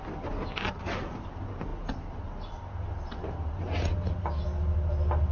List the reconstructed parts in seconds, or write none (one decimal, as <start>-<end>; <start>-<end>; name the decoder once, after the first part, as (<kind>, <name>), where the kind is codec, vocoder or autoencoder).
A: none